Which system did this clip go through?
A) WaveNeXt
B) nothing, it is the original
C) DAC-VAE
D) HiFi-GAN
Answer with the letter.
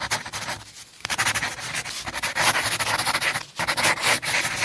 B